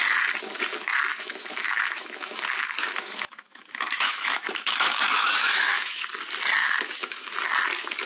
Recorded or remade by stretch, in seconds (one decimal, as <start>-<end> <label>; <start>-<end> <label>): 0.0-1.1 recorded; 1.1-6.0 remade; 6.0-6.6 recorded; 6.6-7.3 remade; 7.3-8.1 recorded